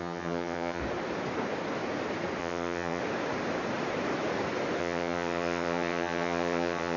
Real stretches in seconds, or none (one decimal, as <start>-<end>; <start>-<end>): 0.8-2.4; 3.0-4.8

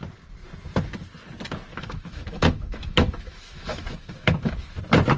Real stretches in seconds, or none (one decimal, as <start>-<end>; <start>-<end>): 0.0-1.7; 4.8-5.2

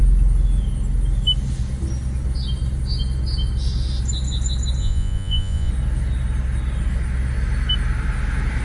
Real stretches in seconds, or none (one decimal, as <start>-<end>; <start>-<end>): 0.0-4.8; 5.7-8.6

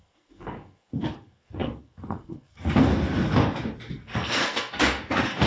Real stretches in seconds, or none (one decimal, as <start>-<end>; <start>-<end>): 2.9-3.9

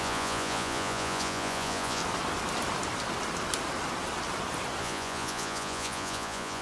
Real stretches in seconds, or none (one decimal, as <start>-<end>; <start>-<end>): 2.0-4.8